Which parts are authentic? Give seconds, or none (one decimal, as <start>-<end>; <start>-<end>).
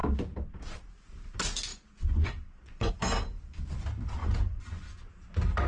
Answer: 0.0-1.7; 2.9-4.2; 5.0-5.7